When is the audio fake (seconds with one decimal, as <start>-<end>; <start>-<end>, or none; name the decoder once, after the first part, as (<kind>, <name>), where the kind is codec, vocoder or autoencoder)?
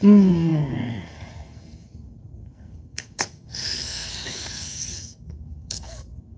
0.0-6.4 (codec, SNAC)